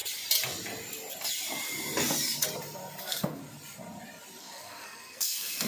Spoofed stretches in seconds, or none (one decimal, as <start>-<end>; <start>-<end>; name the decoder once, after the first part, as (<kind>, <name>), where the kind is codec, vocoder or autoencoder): 3.0-3.4 (codec, SNAC); 4.4-5.7